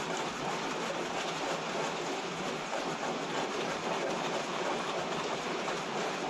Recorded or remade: recorded